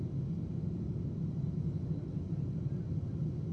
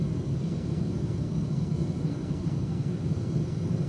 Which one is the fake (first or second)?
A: second